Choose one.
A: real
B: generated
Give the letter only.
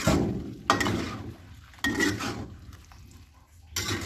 A